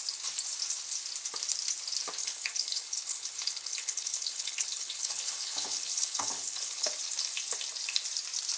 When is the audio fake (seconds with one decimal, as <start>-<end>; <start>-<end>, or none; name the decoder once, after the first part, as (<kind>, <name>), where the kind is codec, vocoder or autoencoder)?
2.2-6.9 (codec, HILCodec)